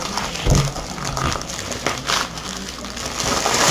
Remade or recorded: recorded